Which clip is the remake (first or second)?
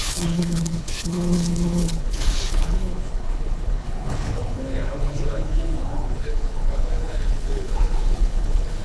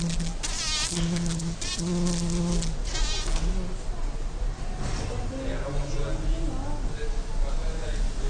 first